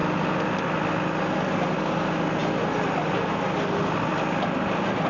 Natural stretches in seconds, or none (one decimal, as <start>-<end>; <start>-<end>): 0.0-5.1